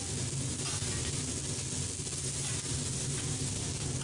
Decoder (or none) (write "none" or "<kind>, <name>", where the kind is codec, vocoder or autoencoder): none